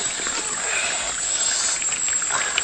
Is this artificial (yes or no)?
no